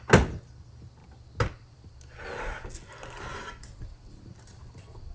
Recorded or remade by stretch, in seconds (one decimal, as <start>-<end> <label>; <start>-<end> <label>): 0.0-5.1 recorded